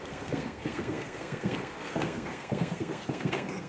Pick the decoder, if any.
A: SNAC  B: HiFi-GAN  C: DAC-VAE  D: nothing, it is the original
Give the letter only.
A